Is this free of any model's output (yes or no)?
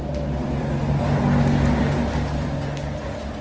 yes